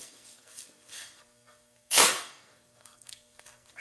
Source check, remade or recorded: remade